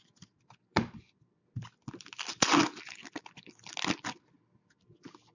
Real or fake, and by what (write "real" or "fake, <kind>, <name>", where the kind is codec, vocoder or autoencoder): real